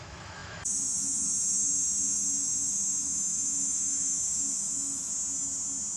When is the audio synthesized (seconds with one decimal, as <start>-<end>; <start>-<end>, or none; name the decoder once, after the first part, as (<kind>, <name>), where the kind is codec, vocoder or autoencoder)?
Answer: 0.0-5.1 (autoencoder, DAC-VAE)